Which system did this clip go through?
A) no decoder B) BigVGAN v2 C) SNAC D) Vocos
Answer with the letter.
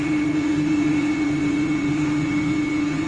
D